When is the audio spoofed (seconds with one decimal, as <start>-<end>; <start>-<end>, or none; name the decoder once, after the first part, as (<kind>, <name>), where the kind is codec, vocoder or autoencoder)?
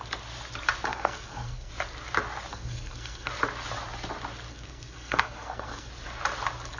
0.9-1.7 (codec, SNAC); 2.5-3.3; 4.5-5.9